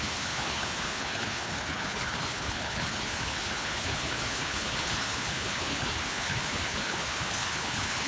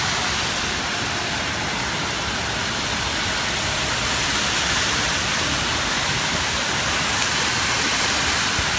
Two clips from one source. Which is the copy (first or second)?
first